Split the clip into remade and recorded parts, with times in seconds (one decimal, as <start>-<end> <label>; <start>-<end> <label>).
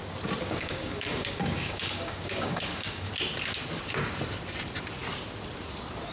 0.0-0.4 recorded; 0.4-3.1 remade; 3.1-6.1 recorded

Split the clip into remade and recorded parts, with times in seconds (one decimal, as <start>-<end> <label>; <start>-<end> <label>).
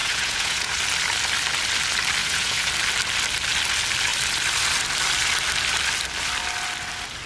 0.0-0.7 remade; 0.7-2.2 recorded; 2.2-2.7 remade; 2.7-7.3 recorded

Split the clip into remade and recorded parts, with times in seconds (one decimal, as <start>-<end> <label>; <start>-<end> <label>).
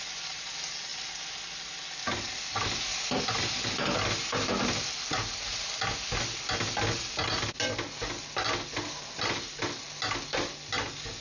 0.0-11.2 recorded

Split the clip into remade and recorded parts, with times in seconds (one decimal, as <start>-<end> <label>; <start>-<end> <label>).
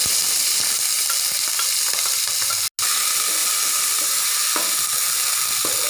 0.0-0.7 remade; 0.7-3.4 recorded; 3.4-4.4 remade; 4.4-5.9 recorded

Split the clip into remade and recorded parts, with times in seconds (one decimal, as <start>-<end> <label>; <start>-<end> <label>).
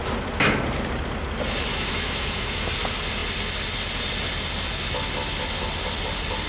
0.0-1.7 recorded; 1.7-2.7 remade; 2.7-6.5 recorded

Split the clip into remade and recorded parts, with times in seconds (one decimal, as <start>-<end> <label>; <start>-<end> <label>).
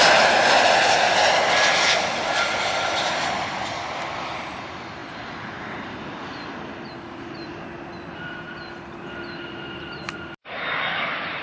0.0-11.4 recorded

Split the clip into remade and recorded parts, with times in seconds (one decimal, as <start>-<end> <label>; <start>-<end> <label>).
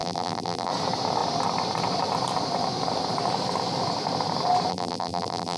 0.0-0.7 remade; 0.7-4.7 recorded; 4.7-5.6 remade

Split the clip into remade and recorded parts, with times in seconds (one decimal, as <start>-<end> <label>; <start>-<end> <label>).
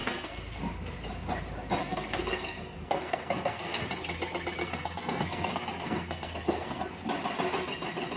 0.0-0.6 remade; 0.6-1.8 recorded; 1.8-3.8 remade; 3.8-4.6 recorded; 4.6-6.8 remade; 6.8-8.2 recorded